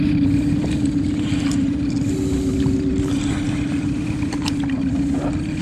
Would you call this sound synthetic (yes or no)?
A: no